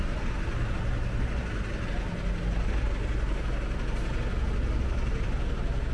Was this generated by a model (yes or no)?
no